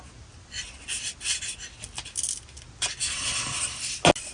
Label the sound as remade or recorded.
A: recorded